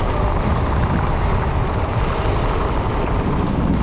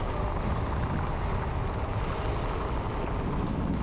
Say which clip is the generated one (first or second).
first